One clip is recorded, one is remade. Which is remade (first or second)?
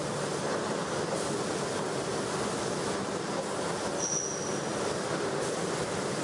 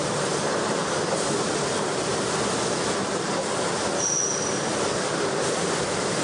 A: second